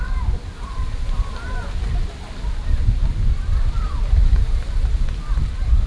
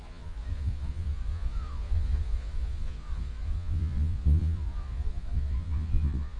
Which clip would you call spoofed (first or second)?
second